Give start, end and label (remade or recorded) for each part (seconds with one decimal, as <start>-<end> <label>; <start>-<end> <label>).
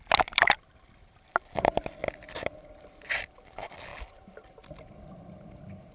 0.0-5.9 remade